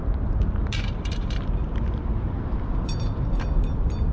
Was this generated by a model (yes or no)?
yes